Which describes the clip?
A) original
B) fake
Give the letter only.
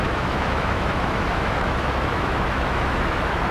B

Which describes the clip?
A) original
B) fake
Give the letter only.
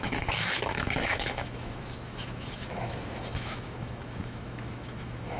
B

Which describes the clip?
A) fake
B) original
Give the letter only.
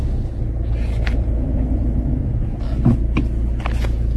B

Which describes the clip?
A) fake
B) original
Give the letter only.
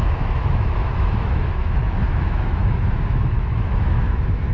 A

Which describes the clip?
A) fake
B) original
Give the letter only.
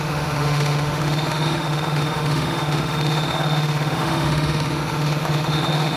A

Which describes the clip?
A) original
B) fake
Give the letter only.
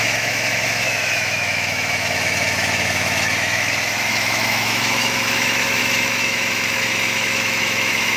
B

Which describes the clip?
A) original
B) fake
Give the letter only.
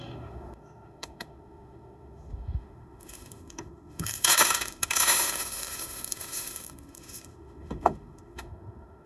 B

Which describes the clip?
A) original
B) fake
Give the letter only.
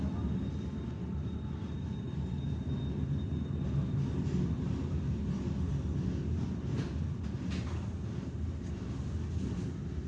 A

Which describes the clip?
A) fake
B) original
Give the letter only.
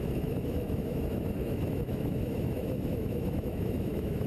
A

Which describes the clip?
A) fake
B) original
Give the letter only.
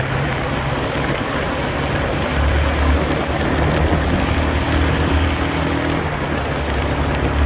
B